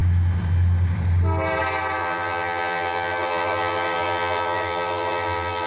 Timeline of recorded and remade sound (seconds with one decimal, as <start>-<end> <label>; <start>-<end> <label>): 0.0-2.0 recorded; 2.0-5.7 remade